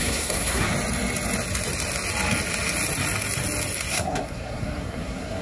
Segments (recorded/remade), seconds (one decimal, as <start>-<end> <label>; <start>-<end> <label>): 0.0-0.7 remade; 0.7-3.9 recorded; 3.9-5.4 remade